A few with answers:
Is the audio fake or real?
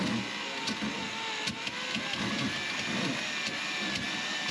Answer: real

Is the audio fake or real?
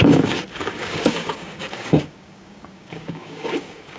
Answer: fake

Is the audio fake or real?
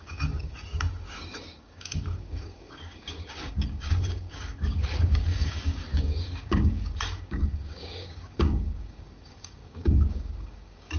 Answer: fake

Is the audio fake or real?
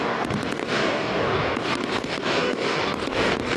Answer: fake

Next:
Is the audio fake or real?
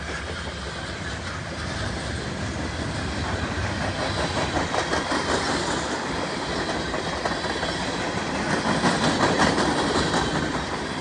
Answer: real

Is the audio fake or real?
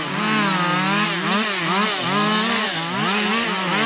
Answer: real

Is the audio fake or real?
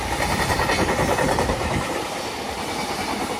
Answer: real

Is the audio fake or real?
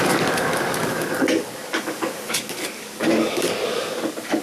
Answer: fake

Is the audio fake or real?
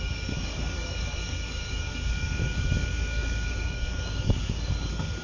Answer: fake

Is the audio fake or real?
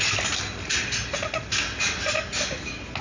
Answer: real